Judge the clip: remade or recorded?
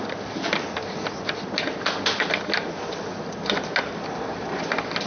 recorded